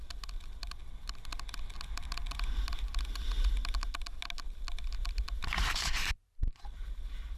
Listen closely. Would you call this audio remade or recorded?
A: recorded